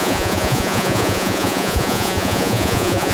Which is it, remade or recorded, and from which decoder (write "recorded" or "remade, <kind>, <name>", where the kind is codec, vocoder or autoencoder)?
remade, vocoder, Vocos